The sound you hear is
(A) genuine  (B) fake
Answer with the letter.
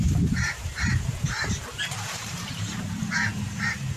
B